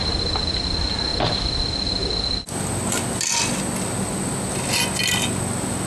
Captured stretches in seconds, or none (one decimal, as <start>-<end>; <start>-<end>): 0.0-5.9

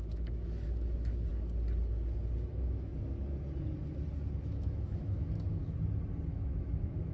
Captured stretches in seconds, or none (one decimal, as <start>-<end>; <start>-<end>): 1.3-2.5; 2.9-4.4; 5.6-6.3

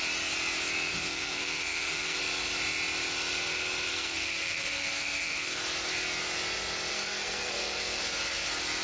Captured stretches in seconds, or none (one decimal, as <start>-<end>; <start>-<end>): 0.0-0.9; 2.2-3.9; 5.6-6.9; 8.0-8.8

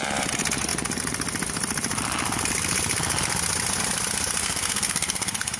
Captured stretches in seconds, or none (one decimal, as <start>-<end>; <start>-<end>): 0.0-4.4

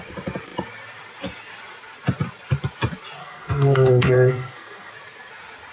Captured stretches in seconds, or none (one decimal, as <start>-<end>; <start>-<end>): 0.0-3.2; 4.9-5.7